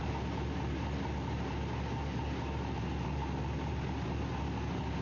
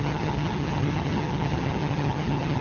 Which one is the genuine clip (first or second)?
first